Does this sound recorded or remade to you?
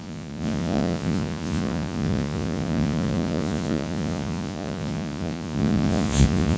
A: remade